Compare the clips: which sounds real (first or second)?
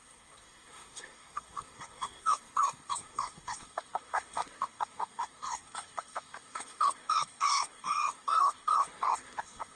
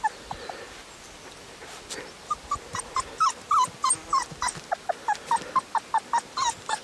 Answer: second